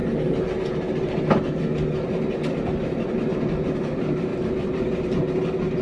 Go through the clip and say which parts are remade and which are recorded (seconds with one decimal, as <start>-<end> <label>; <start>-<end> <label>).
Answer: 0.0-4.3 recorded; 4.3-5.3 remade; 5.3-5.8 recorded